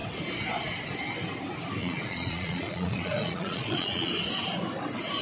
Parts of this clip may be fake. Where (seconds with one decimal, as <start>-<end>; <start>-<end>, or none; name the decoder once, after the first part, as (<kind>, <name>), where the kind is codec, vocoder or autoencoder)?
1.8-4.1 (vocoder, Vocos)